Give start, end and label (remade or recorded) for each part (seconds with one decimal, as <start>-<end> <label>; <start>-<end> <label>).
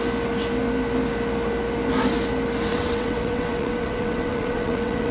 0.0-2.7 recorded; 2.7-5.1 remade